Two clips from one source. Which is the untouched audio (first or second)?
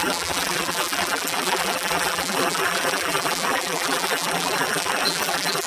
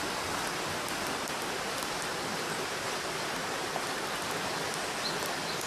second